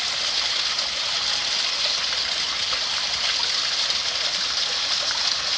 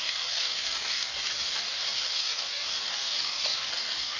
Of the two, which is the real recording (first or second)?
first